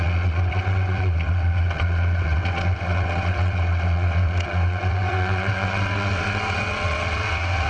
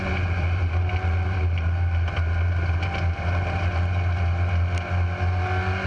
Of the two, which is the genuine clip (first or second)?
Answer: second